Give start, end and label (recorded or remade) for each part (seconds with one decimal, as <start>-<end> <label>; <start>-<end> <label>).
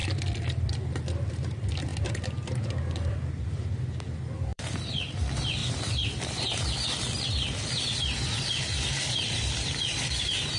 0.0-4.5 recorded; 4.5-5.0 remade; 5.0-5.6 recorded; 5.6-10.0 remade; 10.0-10.6 recorded